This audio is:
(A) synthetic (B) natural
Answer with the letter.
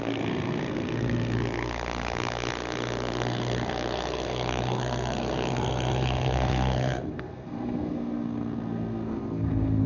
A